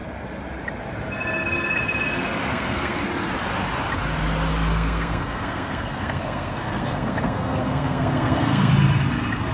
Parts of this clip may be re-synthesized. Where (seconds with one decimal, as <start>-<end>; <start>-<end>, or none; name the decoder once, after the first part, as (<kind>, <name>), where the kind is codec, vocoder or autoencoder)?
2.5-3.0 (codec, SNAC); 4.5-8.7